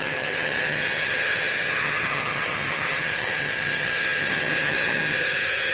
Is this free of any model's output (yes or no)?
no